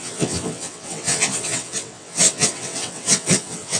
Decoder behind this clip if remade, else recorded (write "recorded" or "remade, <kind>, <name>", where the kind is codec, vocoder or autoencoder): remade, vocoder, WaveNeXt